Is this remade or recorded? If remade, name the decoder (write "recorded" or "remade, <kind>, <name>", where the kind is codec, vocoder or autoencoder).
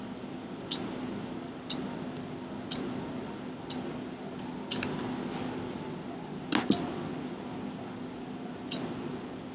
recorded